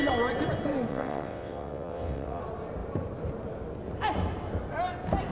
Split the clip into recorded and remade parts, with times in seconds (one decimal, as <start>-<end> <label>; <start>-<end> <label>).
0.0-0.9 recorded; 0.9-2.4 remade; 2.4-5.3 recorded